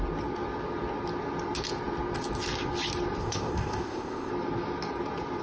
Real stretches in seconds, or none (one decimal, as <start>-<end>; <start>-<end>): 0.0-3.2; 4.3-5.4